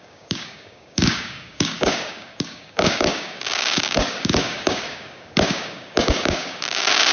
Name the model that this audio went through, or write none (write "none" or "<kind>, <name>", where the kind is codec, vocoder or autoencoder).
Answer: codec, DAC